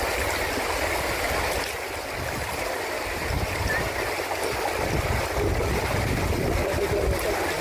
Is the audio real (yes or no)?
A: yes